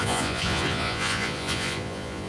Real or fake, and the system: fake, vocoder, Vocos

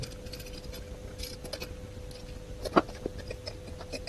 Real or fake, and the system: real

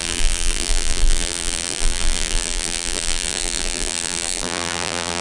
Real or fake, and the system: fake, vocoder, BigVGAN v2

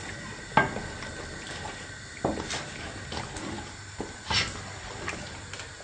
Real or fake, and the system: real